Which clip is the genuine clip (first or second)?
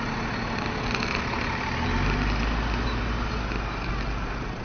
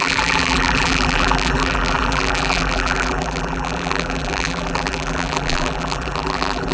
first